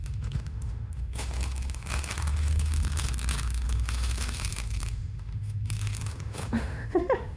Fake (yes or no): yes